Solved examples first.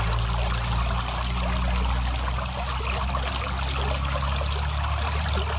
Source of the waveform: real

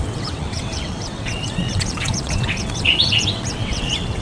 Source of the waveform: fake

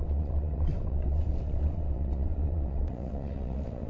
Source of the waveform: fake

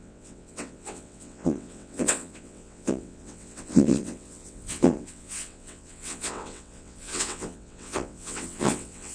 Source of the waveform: fake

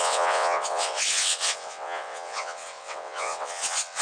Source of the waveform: fake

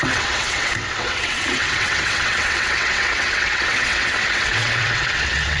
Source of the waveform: fake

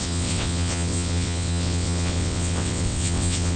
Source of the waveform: fake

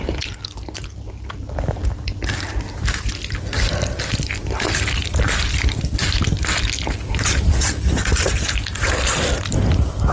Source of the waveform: real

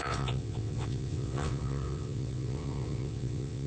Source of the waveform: fake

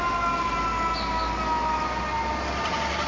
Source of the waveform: real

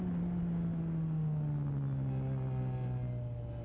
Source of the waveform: real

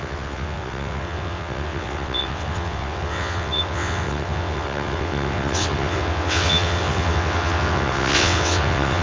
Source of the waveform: fake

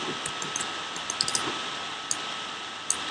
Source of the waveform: real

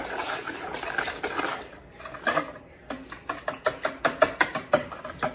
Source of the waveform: real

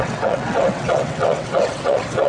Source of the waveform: fake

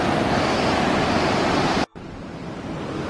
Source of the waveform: real